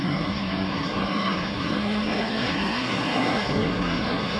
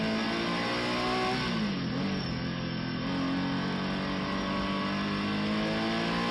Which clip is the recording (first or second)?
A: second